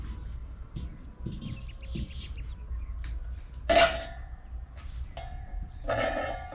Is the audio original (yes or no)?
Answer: yes